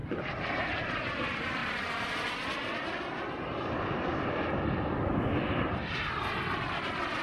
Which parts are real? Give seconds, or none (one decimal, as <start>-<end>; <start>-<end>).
0.0-0.9